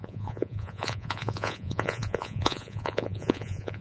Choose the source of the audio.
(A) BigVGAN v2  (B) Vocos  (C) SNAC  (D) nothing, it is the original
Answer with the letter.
B